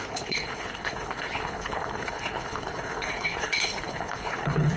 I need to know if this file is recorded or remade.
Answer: remade